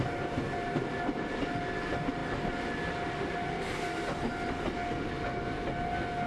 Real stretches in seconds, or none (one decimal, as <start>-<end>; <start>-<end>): 0.0-6.3